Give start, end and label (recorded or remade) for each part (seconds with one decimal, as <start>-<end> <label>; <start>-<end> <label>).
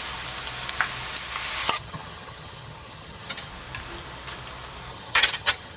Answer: 0.0-1.6 recorded; 1.6-3.5 remade; 3.5-4.9 recorded; 4.9-5.8 remade